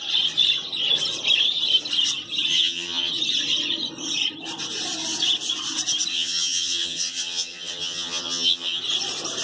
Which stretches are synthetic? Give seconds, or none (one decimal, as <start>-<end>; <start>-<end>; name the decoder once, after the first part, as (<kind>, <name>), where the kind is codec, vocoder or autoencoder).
2.5-3.1 (vocoder, HiFi-GAN); 6.1-8.8